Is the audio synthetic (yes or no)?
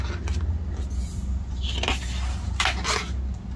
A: no